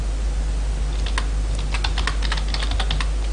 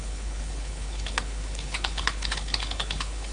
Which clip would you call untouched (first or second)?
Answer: first